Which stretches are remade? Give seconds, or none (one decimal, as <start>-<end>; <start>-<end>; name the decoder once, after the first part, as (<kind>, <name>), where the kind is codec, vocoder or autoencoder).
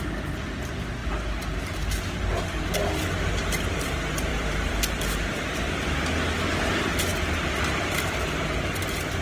4.3-4.8 (vocoder, BigVGAN v2)